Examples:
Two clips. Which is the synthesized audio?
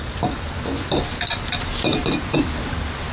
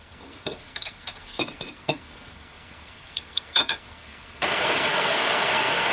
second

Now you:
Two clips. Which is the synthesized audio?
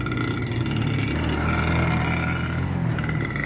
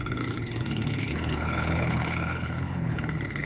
second